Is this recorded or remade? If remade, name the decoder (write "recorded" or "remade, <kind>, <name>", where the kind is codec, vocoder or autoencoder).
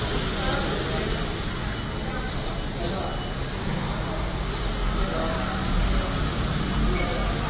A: recorded